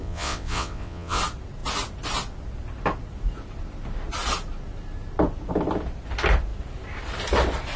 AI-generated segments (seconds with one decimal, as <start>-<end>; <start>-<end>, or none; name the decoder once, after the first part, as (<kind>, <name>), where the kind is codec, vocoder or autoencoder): 0.0-1.2 (vocoder, WaveNeXt)